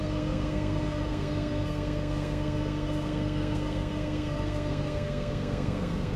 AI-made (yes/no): yes